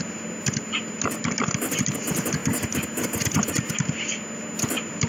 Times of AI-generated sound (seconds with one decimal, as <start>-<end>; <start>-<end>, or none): none